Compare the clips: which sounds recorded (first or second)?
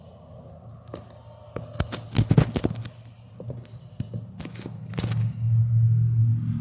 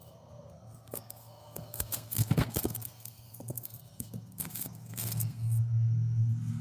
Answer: first